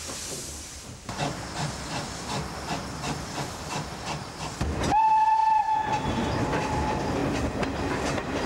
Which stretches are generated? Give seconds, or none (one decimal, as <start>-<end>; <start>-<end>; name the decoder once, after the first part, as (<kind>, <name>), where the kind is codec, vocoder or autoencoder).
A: 0.0-5.4 (vocoder, BigVGAN v2); 6.1-7.2; 7.8-8.5